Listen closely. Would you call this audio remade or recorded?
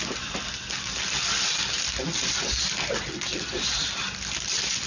recorded